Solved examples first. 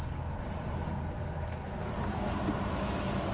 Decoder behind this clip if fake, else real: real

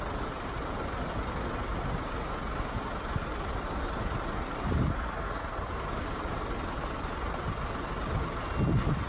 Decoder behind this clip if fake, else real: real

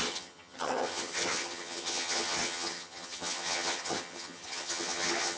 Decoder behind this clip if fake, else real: fake, vocoder, HiFi-GAN